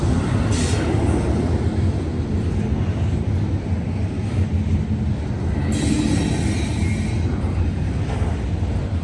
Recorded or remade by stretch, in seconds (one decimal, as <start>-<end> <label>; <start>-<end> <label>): 0.0-9.0 recorded